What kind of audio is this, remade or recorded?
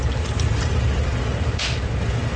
recorded